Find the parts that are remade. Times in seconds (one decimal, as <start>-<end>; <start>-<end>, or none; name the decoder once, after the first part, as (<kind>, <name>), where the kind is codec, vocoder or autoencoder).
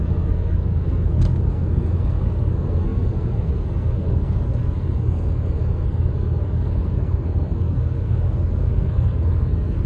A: 0.0-9.9 (codec, SNAC)